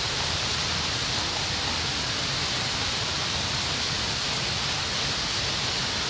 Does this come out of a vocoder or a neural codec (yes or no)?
no